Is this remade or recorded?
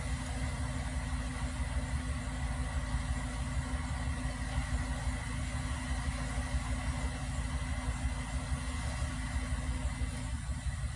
recorded